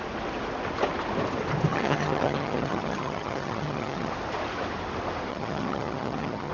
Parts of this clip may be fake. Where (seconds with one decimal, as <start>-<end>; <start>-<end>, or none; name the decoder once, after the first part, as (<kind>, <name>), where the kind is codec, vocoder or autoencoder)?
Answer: 1.7-4.1 (vocoder, HiFi-GAN); 5.3-6.5